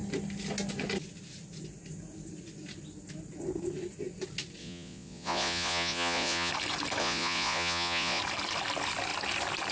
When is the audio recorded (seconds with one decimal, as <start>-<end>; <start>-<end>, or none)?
0.0-4.6; 6.5-7.0; 8.2-9.7